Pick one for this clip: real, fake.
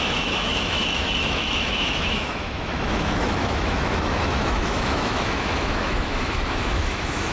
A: fake